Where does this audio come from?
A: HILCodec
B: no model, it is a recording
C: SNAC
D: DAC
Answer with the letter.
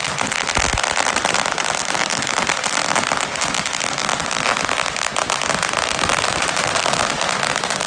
B